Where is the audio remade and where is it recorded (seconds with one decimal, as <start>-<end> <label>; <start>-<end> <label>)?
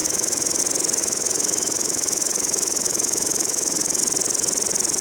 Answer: 0.0-0.6 remade; 0.6-1.0 recorded; 1.0-4.0 remade; 4.0-5.0 recorded